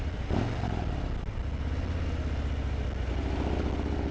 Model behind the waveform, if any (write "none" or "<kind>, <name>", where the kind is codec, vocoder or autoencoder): none